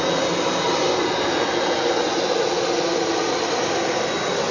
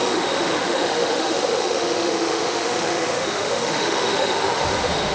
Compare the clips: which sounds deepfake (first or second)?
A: second